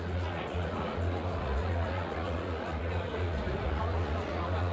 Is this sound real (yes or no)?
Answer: no